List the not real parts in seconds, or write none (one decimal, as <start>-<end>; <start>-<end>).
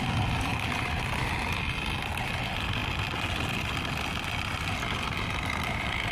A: 0.0-0.5; 2.3-2.8; 4.2-6.1